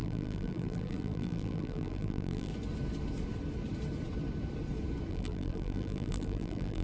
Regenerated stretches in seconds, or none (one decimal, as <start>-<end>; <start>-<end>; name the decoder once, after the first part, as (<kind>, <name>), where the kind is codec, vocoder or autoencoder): 0.0-2.5 (vocoder, BigVGAN v2); 5.1-6.8